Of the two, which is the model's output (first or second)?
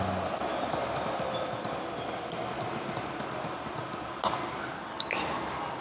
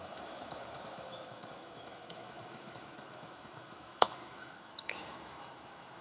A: second